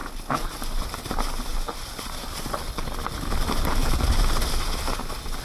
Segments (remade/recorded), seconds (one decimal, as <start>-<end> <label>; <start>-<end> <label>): 0.0-5.4 recorded